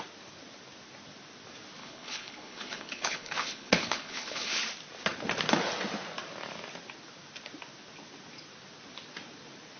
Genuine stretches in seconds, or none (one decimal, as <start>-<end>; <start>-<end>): 0.0-1.8; 4.6-9.8